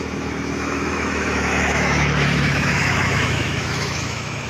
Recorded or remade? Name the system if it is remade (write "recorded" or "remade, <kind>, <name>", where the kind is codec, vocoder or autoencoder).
remade, autoencoder, DAC-VAE